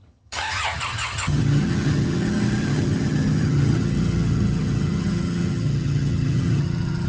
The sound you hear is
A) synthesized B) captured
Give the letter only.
A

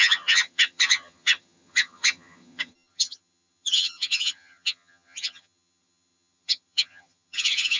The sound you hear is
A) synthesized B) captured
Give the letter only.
A